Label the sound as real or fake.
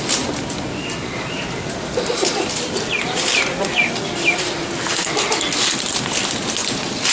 real